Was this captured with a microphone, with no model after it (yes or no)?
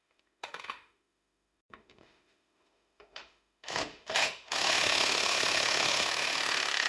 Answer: no